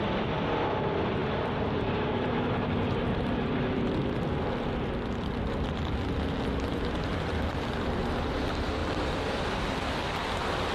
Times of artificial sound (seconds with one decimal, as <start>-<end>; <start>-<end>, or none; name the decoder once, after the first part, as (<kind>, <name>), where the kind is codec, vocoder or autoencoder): 1.2-4.3 (vocoder, BigVGAN v2); 7.1-8.2; 8.8-9.6